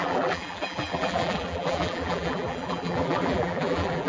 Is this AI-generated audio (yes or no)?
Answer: yes